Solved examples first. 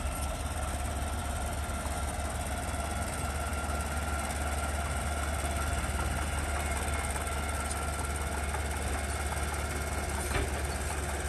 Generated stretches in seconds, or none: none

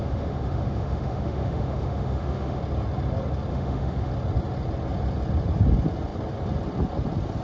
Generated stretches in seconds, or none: 0.0-2.6 (autoencoder, DAC-VAE); 3.5-4.1

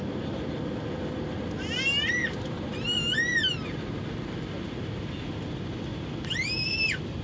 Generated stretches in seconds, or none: none

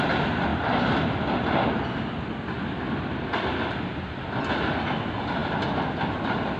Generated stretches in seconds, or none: none